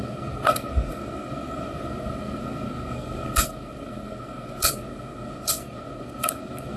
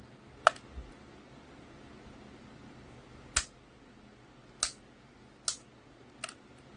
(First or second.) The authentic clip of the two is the second